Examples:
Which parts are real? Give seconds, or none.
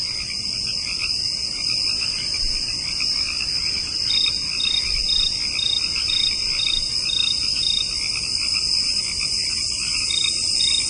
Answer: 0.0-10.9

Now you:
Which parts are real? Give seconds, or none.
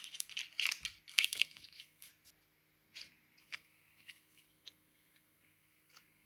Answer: 0.4-1.1; 2.1-3.4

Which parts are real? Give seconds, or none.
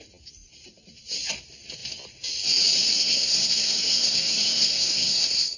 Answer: 0.0-3.0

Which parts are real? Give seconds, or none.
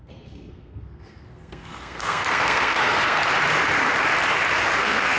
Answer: 3.2-4.8